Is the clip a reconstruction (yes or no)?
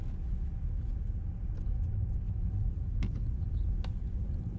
no